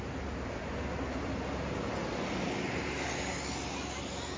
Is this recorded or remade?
recorded